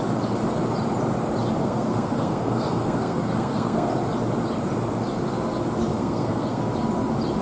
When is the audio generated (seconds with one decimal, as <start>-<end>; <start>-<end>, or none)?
1.6-3.9; 5.9-6.6